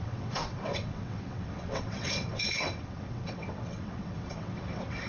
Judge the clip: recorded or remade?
remade